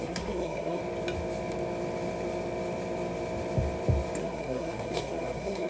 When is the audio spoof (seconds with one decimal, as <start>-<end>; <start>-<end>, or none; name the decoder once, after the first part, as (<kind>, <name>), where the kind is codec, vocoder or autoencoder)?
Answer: 0.0-0.8 (codec, SNAC); 4.2-5.7